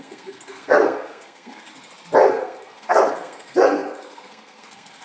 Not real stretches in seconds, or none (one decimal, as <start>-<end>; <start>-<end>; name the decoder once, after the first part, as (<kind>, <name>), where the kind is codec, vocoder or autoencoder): 0.0-1.7 (codec, SNAC); 2.3-5.0

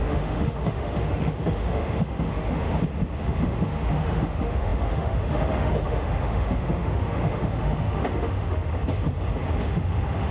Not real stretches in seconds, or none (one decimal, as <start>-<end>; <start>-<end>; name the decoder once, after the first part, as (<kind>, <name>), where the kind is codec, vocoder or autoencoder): 0.0-2.7 (autoencoder, DAC-VAE); 3.2-8.7; 9.6-10.3